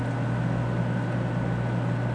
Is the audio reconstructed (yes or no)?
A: no